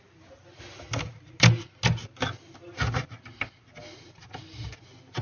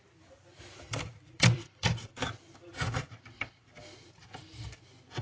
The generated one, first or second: second